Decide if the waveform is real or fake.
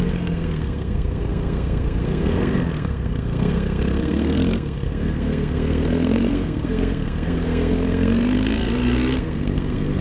fake